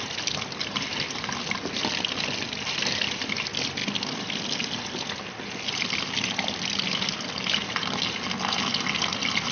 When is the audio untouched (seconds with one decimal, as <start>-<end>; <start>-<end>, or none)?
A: 0.0-9.5